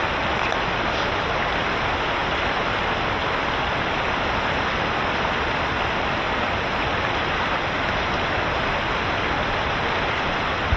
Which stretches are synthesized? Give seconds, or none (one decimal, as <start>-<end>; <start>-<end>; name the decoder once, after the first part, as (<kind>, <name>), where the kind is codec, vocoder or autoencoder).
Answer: none